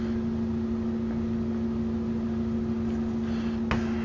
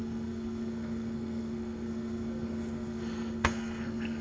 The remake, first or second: second